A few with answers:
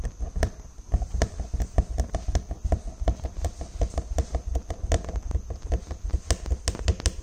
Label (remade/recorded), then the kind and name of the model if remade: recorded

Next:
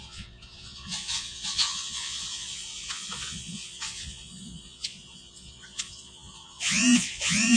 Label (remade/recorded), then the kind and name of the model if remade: remade, vocoder, Vocos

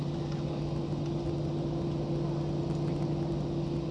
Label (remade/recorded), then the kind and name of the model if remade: recorded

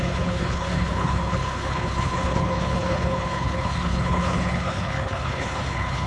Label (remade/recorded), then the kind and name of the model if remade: remade, codec, HILCodec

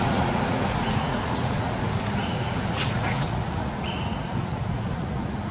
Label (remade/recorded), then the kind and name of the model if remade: remade, vocoder, Vocos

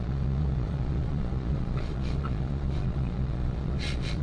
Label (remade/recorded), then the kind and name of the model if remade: remade, vocoder, Vocos